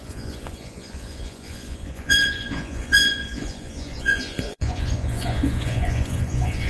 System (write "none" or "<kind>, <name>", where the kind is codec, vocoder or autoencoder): vocoder, Vocos